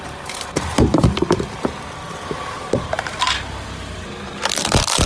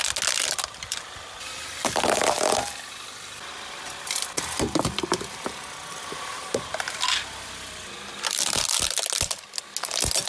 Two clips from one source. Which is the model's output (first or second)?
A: first